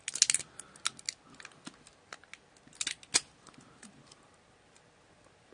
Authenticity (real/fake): real